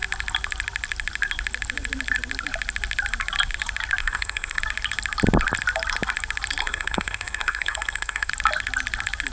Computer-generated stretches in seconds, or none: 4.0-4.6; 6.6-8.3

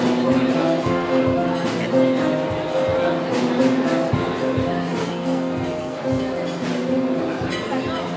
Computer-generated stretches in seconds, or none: 0.6-1.2; 5.0-6.0

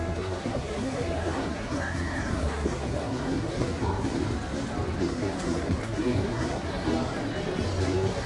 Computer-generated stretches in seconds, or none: 0.0-4.2; 5.0-6.9; 7.8-8.3

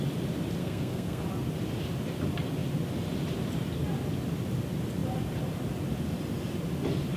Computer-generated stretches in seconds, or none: 0.6-1.2